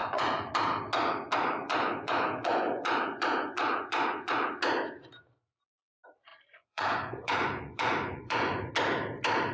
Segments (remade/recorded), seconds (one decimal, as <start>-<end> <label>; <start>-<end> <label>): 0.0-0.5 remade; 0.5-1.6 recorded; 1.6-4.5 remade; 4.5-6.3 recorded; 6.3-8.7 remade; 8.7-9.5 recorded